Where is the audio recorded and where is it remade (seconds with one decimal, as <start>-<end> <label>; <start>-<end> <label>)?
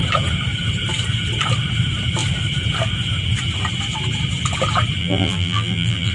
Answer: 0.0-5.0 recorded; 5.0-6.1 remade